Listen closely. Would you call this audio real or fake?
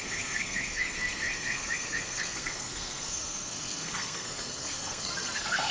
fake